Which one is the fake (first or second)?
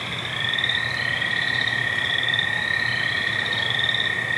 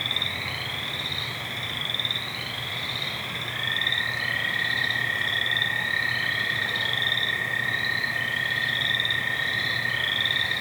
first